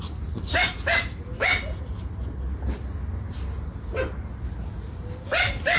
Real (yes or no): yes